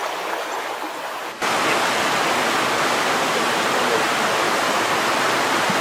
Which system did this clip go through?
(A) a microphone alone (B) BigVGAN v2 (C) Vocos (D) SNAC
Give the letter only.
A